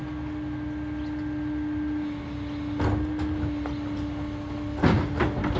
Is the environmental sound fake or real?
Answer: real